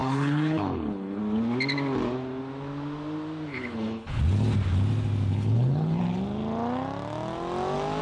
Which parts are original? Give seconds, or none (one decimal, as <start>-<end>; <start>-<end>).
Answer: 1.2-3.5; 4.2-5.3; 6.0-8.0